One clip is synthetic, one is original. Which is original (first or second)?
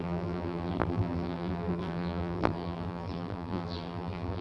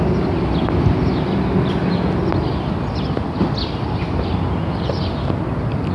second